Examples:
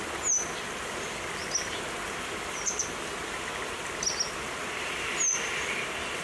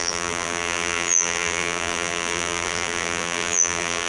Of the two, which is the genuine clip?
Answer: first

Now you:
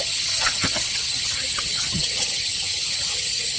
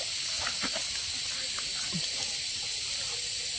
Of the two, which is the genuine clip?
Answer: second